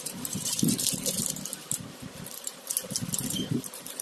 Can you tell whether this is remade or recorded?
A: remade